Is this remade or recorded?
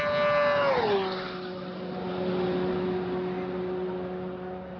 recorded